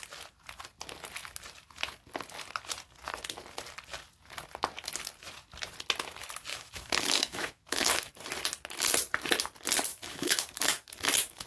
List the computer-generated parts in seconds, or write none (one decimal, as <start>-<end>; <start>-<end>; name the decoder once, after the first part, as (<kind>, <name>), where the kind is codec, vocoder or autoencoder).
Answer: 6.5-8.1 (autoencoder, DAC-VAE); 9.9-11.5